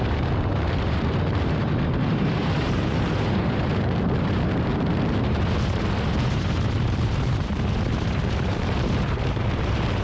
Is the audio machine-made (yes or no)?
yes